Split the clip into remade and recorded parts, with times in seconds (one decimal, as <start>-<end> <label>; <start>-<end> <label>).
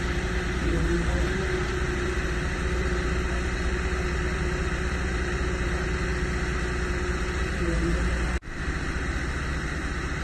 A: 0.0-6.1 remade; 6.1-6.9 recorded; 6.9-10.2 remade